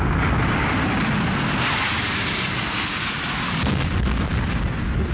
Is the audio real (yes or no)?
yes